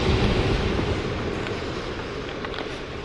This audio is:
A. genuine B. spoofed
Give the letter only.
A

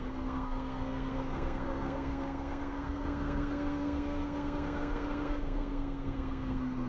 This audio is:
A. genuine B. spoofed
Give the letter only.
B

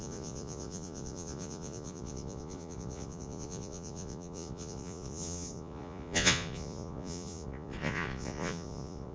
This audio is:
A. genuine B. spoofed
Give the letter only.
B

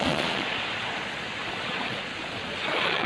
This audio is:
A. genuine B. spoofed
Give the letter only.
B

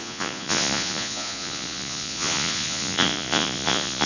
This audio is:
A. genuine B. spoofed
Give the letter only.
B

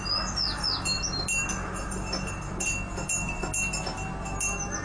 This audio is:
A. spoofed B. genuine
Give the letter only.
B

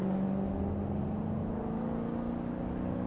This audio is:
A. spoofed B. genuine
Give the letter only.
B